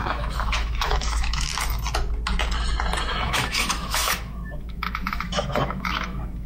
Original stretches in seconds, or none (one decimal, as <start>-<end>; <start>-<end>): 1.5-3.1